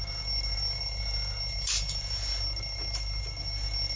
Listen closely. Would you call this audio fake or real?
real